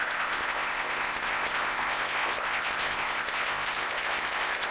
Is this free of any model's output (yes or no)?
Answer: no